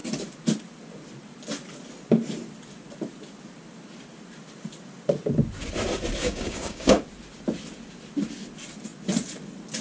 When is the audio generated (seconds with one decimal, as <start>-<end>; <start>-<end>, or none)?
6.2-7.0